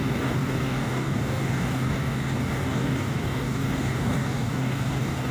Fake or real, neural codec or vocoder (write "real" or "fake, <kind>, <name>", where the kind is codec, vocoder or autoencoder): fake, codec, DAC